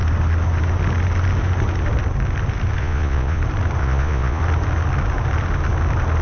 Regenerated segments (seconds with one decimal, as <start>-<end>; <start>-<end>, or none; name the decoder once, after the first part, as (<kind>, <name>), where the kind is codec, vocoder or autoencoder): 2.8-3.4 (vocoder, Vocos); 3.8-4.4